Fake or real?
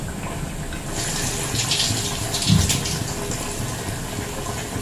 real